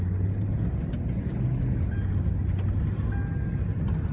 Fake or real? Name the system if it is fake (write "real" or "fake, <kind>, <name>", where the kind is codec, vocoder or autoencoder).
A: real